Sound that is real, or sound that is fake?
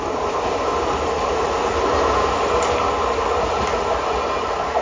real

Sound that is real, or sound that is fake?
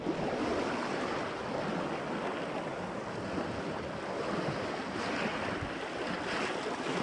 real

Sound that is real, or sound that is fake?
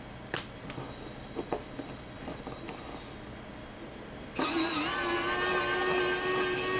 real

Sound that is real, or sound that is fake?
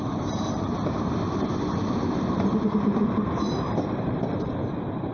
fake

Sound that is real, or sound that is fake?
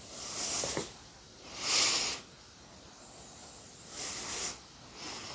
real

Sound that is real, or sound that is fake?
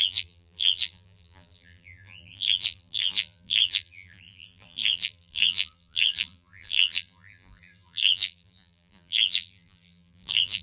fake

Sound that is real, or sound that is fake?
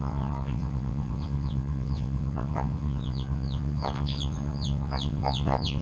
fake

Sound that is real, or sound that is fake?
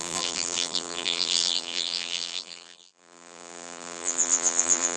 fake